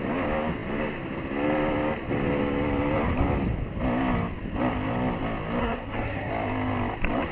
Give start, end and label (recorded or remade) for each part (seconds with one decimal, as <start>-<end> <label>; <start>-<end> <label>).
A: 0.0-5.6 recorded; 5.6-6.3 remade; 6.3-7.3 recorded